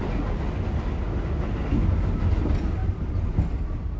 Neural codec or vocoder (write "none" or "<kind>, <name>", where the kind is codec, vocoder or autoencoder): none